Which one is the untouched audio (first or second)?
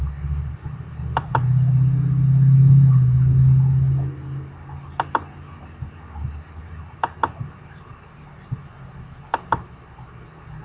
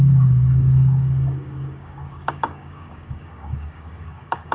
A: first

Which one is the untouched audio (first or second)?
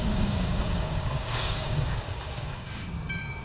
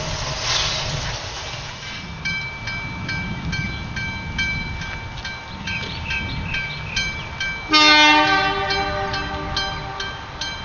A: second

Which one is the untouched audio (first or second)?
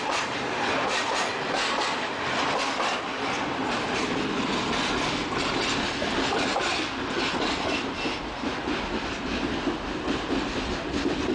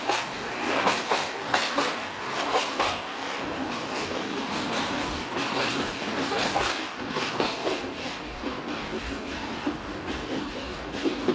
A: first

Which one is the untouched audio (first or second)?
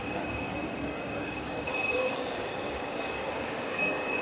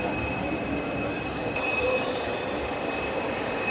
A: second